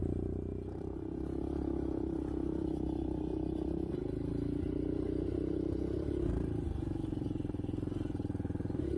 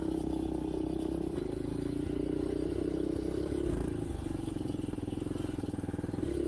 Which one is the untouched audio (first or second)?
second